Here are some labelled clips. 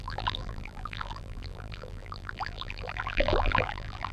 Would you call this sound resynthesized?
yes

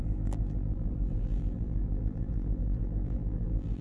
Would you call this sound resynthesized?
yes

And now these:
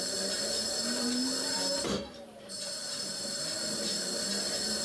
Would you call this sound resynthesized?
yes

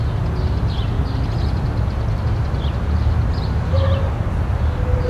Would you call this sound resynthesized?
no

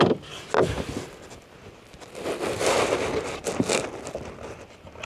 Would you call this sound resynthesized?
no